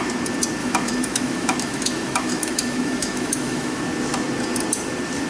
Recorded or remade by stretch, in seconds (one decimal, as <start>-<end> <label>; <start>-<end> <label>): 0.0-0.6 recorded; 0.6-3.8 remade; 3.8-5.3 recorded